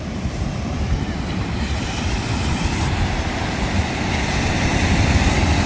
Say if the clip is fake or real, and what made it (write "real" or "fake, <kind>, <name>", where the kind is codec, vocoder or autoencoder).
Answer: real